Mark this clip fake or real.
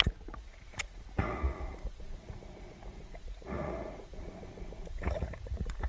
fake